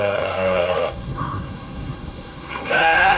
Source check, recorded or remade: remade